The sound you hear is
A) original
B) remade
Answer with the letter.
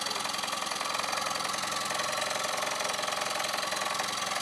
A